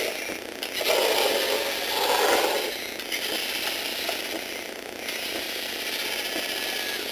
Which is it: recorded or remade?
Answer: recorded